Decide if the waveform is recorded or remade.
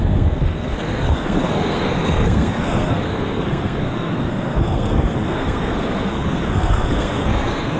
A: remade